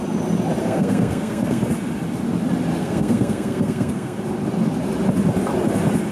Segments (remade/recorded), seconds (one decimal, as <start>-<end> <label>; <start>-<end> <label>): 0.0-0.6 recorded; 0.6-1.6 remade; 1.6-2.8 recorded; 2.8-4.2 remade; 4.2-6.1 recorded